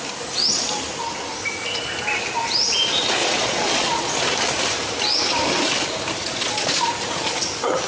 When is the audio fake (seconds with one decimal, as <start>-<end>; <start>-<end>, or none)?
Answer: 3.2-4.1; 6.2-6.9

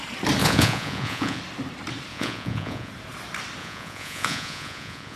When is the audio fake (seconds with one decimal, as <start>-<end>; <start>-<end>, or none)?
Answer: 0.4-1.4; 2.1-2.9; 3.6-5.2

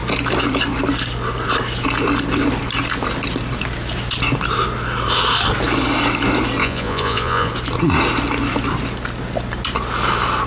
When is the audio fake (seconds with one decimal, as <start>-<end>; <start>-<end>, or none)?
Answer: 6.6-7.5

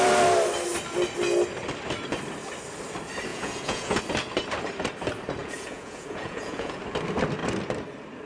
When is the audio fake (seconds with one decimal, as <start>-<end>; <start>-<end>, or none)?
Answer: 3.3-4.0; 5.4-6.8

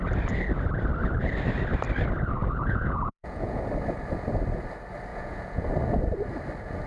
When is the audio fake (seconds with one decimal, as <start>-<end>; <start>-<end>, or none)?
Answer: 2.4-3.6; 5.1-5.7

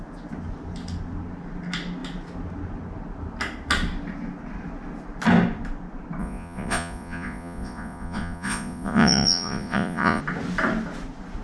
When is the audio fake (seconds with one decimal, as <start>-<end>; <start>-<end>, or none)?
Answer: 6.2-10.2